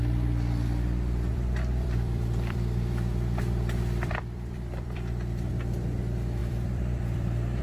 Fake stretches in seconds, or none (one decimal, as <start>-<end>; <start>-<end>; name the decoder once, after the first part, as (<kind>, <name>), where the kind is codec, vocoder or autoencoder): 1.3-5.5 (vocoder, BigVGAN v2); 6.4-7.6